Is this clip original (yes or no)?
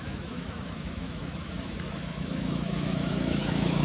no